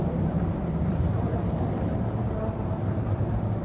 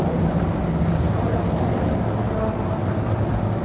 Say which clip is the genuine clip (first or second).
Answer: second